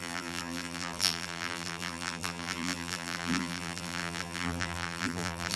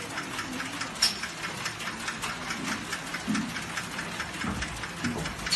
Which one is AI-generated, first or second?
first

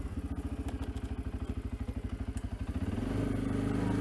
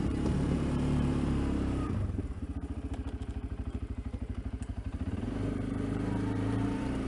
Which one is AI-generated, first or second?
second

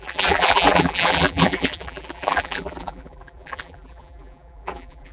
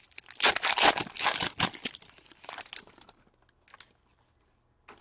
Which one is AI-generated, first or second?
first